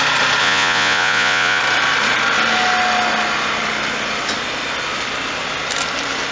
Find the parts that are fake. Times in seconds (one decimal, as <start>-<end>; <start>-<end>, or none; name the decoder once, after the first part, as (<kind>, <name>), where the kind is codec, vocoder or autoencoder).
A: 0.4-1.6 (vocoder, Vocos)

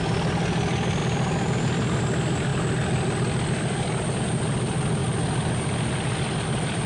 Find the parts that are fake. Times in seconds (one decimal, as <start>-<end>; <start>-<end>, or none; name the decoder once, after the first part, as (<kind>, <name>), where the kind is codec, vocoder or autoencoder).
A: none

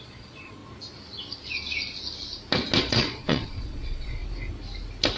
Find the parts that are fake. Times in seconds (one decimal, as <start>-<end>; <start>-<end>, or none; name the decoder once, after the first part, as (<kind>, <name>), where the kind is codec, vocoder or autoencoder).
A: 0.0-0.6 (vocoder, Vocos); 2.8-4.2

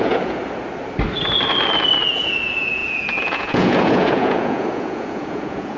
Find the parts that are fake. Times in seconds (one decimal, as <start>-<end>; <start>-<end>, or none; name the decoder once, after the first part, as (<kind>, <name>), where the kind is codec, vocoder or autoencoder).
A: 0.0-0.4 (vocoder, Vocos); 2.1-5.8

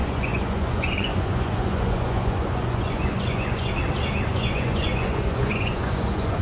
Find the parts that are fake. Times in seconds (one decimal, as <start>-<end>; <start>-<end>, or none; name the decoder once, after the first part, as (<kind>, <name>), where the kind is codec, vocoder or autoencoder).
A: 0.0-3.7 (vocoder, Vocos); 4.3-6.4

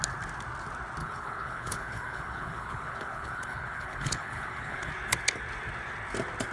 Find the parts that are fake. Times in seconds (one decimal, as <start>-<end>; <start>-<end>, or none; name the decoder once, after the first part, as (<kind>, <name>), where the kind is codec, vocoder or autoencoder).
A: 1.0-4.9 (codec, HILCodec)